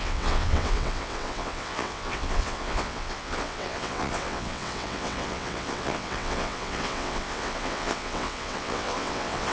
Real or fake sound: fake